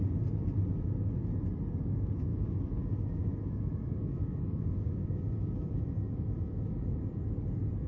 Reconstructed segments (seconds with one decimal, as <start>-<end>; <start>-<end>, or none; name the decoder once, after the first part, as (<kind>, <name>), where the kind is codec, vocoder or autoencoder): 2.3-7.0 (autoencoder, DAC-VAE)